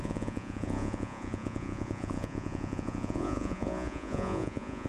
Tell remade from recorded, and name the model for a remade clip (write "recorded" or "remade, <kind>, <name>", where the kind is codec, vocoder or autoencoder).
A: remade, vocoder, Vocos